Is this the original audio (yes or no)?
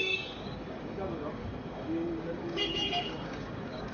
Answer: no